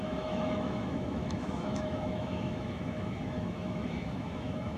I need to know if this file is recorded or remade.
remade